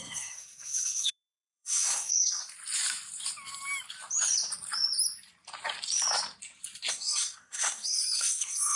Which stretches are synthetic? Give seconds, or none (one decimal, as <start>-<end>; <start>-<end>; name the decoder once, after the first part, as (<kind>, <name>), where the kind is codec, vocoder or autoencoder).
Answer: 0.0-2.4 (codec, SNAC); 6.9-8.8